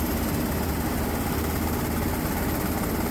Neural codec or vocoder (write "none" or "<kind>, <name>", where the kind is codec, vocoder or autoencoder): none